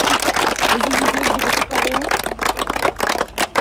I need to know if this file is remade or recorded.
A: recorded